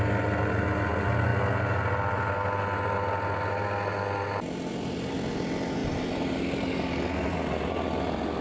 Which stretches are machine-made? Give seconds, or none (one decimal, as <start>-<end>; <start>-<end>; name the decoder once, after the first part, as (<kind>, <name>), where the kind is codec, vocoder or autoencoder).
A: 5.8-6.4 (vocoder, BigVGAN v2)